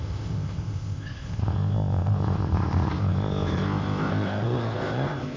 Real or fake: fake